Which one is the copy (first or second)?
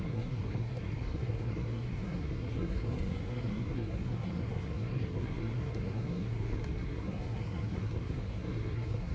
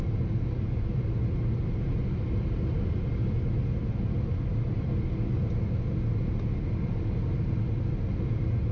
first